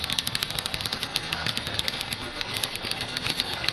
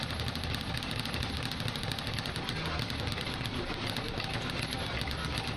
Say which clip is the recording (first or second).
second